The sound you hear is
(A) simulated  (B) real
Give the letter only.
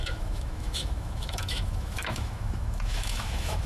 A